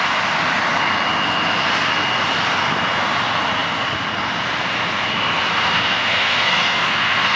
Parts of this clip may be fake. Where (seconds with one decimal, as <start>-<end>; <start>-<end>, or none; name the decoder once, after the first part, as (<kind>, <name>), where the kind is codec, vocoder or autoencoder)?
5.5-7.4 (codec, SNAC)